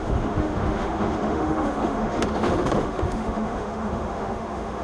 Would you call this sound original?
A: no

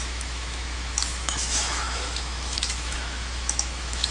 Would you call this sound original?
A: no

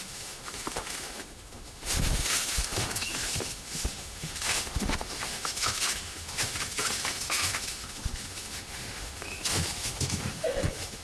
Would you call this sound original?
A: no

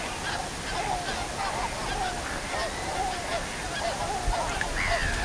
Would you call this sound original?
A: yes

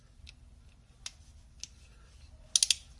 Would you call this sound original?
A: yes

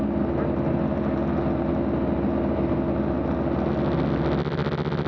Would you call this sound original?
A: yes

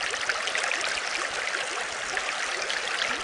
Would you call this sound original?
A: yes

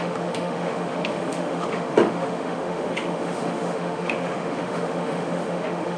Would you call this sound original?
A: no